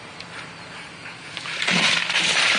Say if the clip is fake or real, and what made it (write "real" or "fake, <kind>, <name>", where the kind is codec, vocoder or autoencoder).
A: fake, vocoder, BigVGAN v2